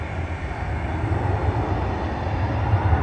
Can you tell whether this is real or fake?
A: real